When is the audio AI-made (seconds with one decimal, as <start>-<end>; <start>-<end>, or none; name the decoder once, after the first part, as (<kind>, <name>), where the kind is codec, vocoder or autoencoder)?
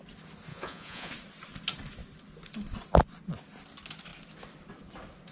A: 0.5-1.1 (vocoder, Vocos)